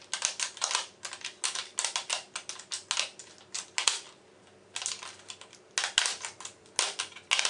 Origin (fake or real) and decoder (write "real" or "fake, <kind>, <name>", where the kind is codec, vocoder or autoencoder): real